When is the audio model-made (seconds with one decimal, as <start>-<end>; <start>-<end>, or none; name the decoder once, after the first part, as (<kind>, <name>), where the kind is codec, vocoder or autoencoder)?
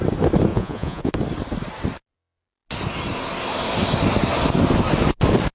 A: 0.5-1.1 (vocoder, Vocos)